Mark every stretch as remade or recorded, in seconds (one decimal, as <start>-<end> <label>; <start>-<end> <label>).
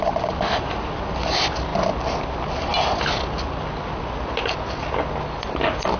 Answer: 0.0-6.0 recorded